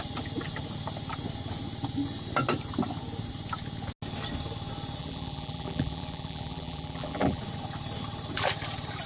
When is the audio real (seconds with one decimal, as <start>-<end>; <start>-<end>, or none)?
0.0-5.0; 7.4-9.1